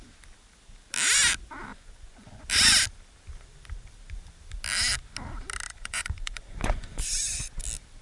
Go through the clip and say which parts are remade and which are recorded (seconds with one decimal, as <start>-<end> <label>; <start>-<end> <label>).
0.0-1.7 recorded; 1.7-2.4 remade; 2.4-5.7 recorded; 5.7-7.6 remade; 7.6-8.0 recorded